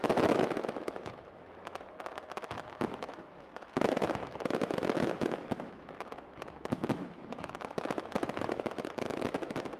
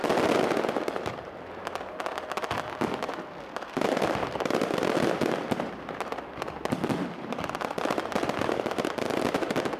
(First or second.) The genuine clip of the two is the second